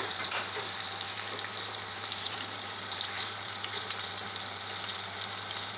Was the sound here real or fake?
fake